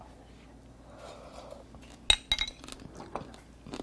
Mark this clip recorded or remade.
recorded